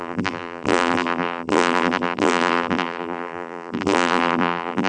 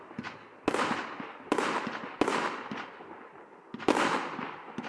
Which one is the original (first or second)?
second